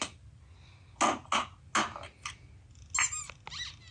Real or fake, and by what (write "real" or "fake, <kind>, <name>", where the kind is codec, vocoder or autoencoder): real